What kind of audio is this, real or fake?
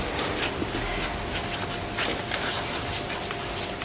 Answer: real